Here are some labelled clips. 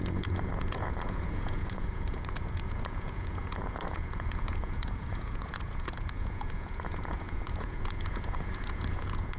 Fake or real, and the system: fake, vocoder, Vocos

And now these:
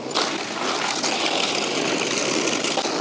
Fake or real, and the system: real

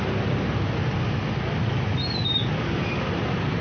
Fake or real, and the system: real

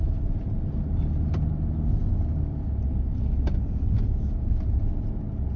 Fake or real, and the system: real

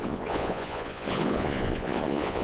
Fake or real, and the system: fake, vocoder, Vocos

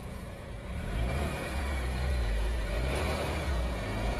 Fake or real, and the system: fake, vocoder, Vocos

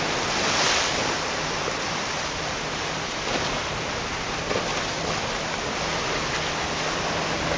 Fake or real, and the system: real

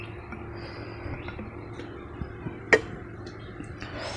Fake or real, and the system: real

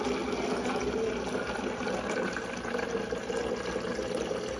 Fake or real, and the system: real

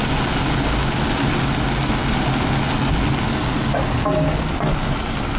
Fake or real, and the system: real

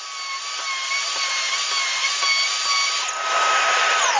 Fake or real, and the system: real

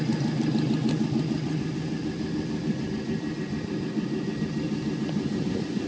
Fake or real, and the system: real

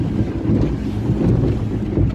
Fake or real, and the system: real